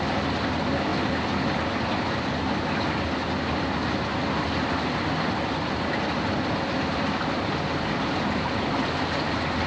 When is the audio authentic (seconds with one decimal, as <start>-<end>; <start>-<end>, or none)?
0.0-9.7